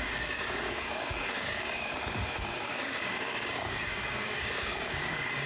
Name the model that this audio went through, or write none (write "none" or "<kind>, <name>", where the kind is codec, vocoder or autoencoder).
codec, DAC